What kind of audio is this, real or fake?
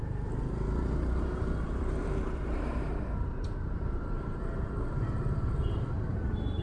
fake